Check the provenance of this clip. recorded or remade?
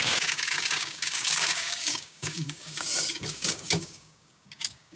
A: remade